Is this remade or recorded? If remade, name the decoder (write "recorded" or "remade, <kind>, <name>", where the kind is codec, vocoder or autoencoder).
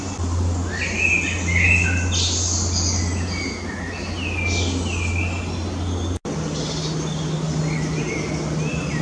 recorded